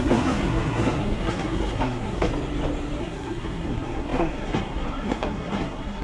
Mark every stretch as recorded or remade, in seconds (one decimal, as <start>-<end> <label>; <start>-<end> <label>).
0.0-2.3 remade; 2.3-3.0 recorded; 3.0-6.0 remade